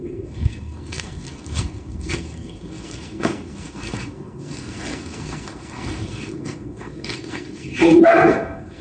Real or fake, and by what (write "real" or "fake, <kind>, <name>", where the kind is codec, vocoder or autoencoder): fake, codec, SNAC